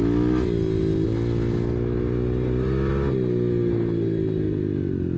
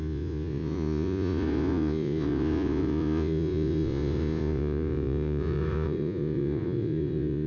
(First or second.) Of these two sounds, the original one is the first